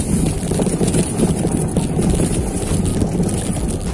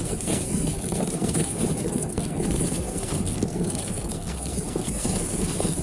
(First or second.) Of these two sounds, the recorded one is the first